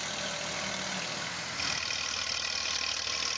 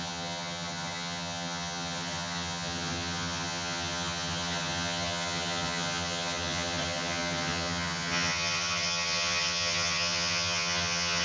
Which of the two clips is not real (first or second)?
second